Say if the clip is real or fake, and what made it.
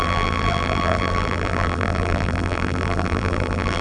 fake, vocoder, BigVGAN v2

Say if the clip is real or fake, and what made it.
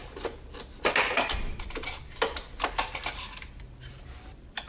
real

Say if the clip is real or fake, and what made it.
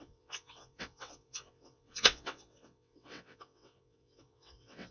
fake, vocoder, WaveNeXt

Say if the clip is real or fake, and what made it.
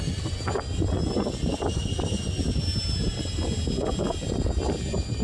real